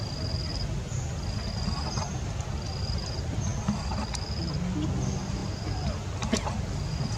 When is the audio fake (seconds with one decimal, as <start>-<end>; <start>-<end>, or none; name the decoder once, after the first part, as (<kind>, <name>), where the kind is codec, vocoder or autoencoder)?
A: none